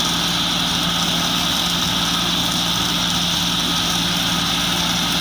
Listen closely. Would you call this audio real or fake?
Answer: real